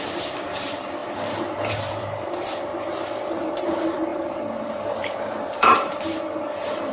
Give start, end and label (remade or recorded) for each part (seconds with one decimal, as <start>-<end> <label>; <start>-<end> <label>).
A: 0.0-2.7 remade; 2.7-3.4 recorded; 3.4-6.9 remade